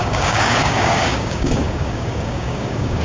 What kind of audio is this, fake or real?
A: fake